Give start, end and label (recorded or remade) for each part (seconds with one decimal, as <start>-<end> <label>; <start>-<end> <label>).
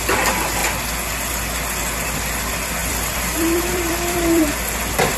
0.0-2.8 recorded; 2.8-4.4 remade; 4.4-5.2 recorded